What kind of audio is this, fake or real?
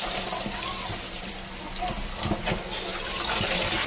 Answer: real